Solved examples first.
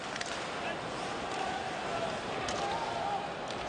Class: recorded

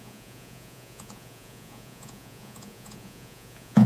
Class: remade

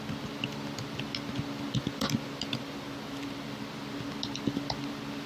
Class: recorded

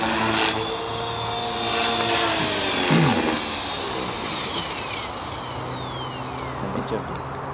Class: recorded